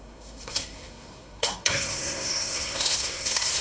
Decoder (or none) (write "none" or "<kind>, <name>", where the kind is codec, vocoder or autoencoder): codec, SNAC